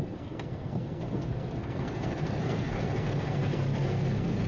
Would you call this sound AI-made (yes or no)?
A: yes